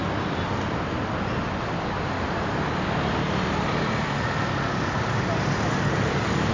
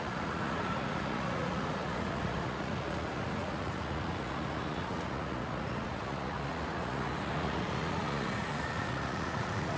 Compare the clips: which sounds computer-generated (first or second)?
second